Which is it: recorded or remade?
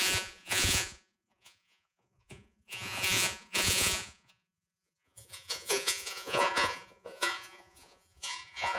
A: remade